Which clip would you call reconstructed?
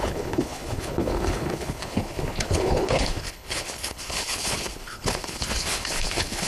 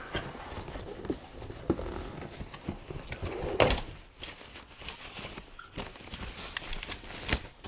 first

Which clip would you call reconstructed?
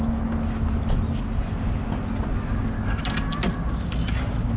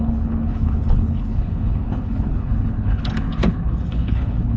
second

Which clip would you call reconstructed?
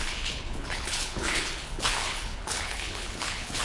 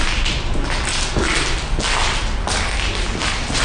first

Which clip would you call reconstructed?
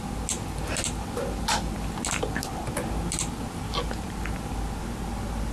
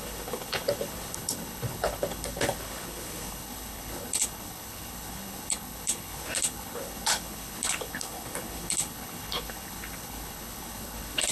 second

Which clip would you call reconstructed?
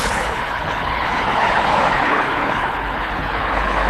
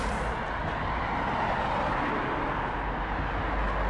first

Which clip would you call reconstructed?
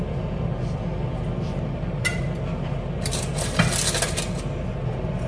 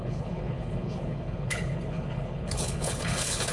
second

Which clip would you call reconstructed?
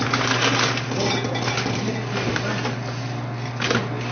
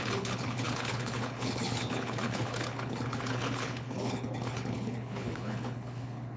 second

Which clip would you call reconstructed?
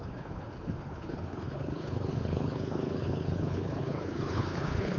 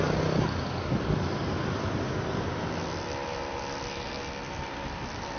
first